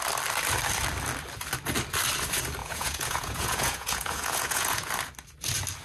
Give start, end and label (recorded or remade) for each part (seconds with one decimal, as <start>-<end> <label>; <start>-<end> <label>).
0.0-2.6 recorded; 2.6-4.9 remade; 4.9-5.8 recorded